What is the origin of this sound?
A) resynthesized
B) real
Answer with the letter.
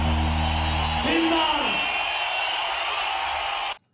B